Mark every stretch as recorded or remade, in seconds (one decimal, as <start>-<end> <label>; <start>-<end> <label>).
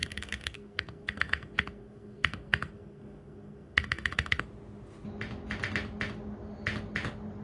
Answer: 0.0-4.4 remade; 4.4-7.4 recorded